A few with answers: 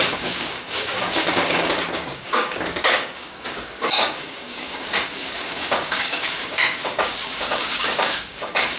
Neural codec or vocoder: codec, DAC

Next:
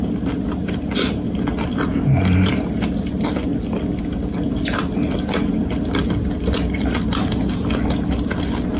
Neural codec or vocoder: none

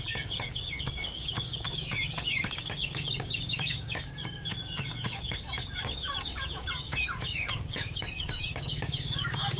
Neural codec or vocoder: codec, DAC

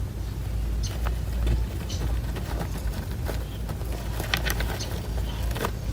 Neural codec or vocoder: none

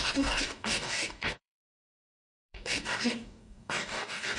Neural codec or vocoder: codec, DAC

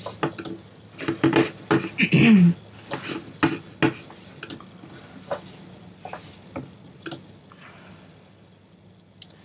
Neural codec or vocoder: none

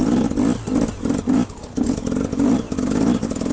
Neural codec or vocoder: none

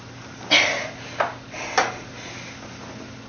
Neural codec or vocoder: none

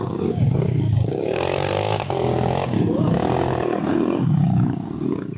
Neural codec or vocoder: codec, DAC